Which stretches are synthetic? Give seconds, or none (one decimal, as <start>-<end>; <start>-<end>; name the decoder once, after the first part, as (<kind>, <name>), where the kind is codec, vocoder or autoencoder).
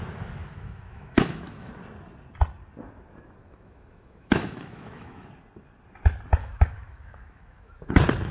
0.4-1.7 (autoencoder, DAC-VAE); 3.4-5.3; 6.4-7.9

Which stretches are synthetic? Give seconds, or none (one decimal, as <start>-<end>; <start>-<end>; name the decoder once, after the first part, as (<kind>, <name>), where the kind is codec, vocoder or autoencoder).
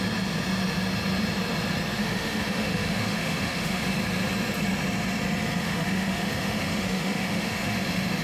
2.0-3.8 (autoencoder, DAC-VAE); 5.6-8.2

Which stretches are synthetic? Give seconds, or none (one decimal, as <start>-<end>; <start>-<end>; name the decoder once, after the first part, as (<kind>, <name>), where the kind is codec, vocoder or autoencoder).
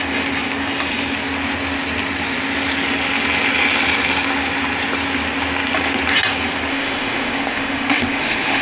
6.7-8.6 (autoencoder, DAC-VAE)